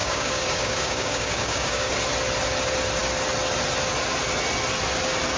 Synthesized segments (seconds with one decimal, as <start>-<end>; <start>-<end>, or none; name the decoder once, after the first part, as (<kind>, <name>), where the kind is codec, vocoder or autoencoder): 0.0-1.9 (codec, DAC)

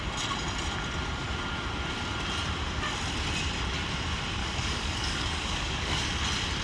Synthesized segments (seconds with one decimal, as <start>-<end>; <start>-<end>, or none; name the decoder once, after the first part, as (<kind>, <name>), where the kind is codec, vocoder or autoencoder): 4.4-6.0 (codec, DAC)

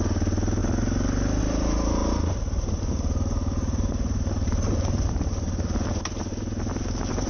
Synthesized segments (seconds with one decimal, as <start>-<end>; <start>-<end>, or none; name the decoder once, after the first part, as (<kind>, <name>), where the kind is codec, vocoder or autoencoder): none

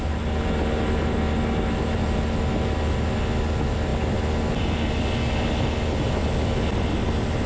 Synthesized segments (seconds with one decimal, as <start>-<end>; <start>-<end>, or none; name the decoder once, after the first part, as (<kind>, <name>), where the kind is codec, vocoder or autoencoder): none

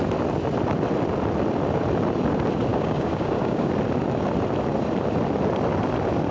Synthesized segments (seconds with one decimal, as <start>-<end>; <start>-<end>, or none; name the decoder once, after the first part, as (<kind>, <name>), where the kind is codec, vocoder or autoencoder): 2.7-3.7 (codec, DAC)

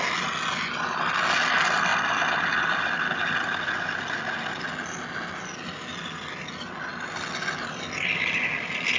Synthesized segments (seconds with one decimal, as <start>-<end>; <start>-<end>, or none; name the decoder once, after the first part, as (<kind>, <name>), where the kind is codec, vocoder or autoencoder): none